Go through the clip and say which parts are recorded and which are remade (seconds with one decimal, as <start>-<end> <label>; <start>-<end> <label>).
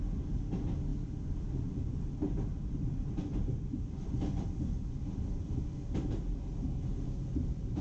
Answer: 0.0-0.9 recorded; 0.9-5.6 remade; 5.6-7.8 recorded